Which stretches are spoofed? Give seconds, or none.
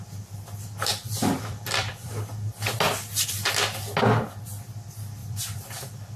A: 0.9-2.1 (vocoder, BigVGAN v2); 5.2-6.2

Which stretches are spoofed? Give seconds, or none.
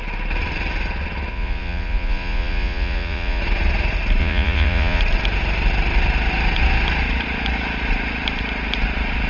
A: 1.3-3.4 (vocoder, Vocos); 4.2-5.0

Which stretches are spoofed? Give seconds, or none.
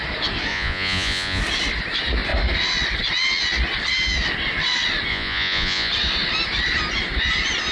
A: 0.5-1.4 (vocoder, Vocos); 5.1-5.9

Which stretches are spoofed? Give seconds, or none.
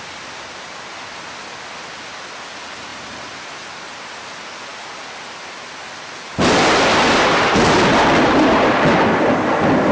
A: 2.9-3.4 (vocoder, BigVGAN v2)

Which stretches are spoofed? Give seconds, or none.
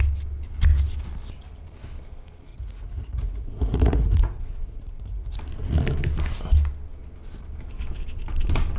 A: 2.5-5.4 (vocoder, Vocos)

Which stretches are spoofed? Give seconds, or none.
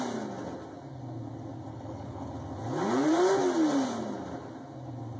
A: 1.7-2.3 (codec, HILCodec)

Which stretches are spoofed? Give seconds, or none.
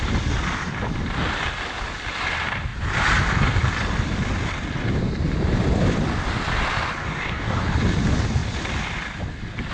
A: 7.0-7.6 (codec, DAC)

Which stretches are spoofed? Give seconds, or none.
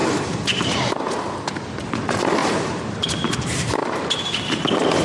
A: 0.0-0.7 (vocoder, BigVGAN v2); 2.4-3.3; 3.8-4.3